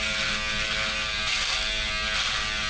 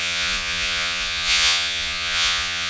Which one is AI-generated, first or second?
second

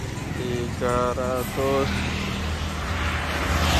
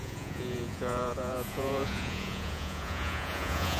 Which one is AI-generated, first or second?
second